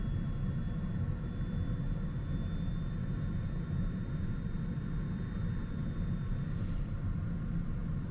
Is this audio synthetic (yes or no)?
no